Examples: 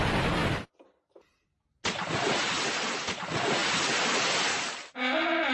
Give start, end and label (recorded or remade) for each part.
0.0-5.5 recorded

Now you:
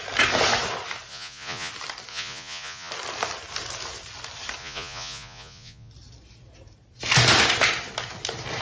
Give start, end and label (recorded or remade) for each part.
0.0-1.1 recorded; 1.1-1.7 remade; 1.7-2.1 recorded; 2.1-2.9 remade; 2.9-4.6 recorded; 4.6-5.9 remade; 5.9-8.6 recorded

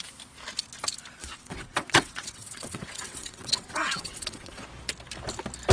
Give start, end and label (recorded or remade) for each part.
0.0-1.2 recorded; 1.2-4.6 remade; 4.6-5.7 recorded

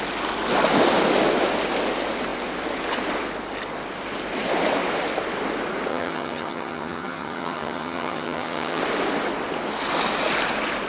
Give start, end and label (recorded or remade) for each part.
0.0-5.9 recorded; 5.9-8.8 remade; 8.8-10.9 recorded

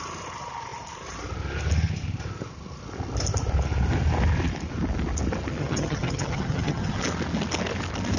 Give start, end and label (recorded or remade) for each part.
0.0-5.6 recorded; 5.6-7.0 remade; 7.0-8.2 recorded

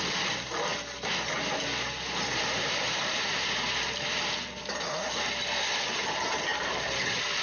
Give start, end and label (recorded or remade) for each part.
0.0-7.4 recorded